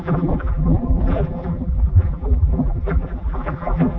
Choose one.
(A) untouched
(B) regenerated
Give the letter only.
B